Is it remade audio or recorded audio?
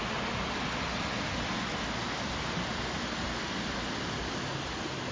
recorded